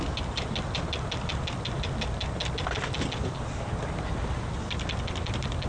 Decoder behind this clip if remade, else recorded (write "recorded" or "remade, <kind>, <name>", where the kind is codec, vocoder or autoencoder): recorded